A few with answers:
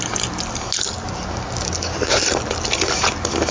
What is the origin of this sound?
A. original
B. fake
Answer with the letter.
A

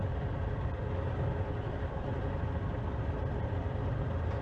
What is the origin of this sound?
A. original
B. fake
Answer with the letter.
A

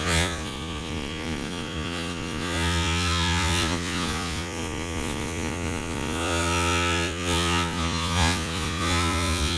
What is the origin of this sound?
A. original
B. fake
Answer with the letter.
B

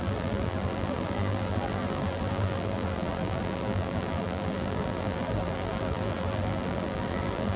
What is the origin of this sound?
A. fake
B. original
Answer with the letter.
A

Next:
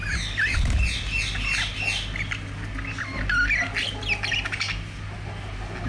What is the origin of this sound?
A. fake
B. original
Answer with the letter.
B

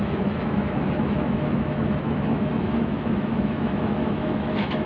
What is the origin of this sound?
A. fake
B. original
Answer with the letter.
A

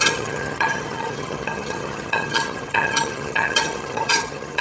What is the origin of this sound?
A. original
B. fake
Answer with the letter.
B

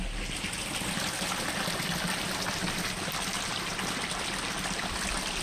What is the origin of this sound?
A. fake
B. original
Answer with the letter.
B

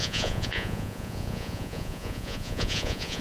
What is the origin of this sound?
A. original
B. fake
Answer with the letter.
B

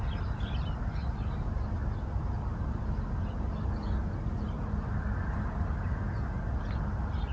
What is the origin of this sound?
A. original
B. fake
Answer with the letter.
A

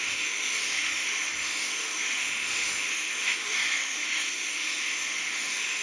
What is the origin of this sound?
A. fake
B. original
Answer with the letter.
A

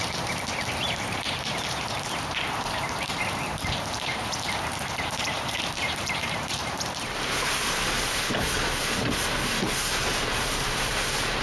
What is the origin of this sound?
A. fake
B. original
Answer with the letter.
A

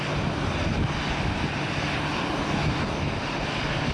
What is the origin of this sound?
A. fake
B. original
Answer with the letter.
B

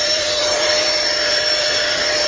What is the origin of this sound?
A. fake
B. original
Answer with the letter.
A